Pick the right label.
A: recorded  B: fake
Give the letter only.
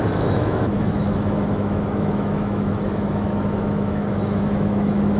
B